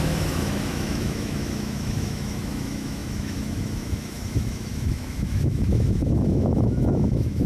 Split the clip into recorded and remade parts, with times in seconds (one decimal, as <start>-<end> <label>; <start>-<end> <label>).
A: 0.0-7.5 remade